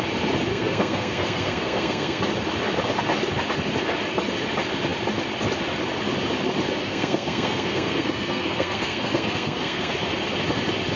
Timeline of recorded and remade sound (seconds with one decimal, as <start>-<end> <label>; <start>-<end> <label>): 0.0-0.5 recorded; 0.5-2.2 remade; 2.2-6.8 recorded; 6.8-9.9 remade; 9.9-11.0 recorded